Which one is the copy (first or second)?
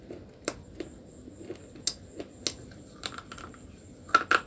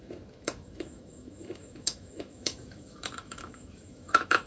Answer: second